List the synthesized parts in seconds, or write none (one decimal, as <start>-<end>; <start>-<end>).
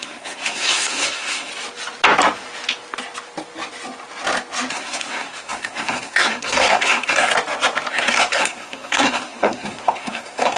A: 0.0-1.5; 4.7-7.3; 7.9-10.6